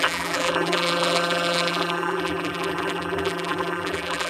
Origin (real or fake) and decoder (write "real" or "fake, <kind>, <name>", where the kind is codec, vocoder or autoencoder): fake, vocoder, BigVGAN v2